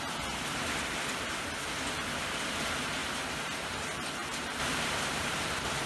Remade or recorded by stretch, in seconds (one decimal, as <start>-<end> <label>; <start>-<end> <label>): 0.0-4.2 recorded; 4.2-5.5 remade; 5.5-5.9 recorded